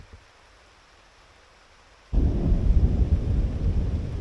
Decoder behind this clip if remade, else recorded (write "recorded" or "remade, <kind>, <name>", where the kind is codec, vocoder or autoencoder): recorded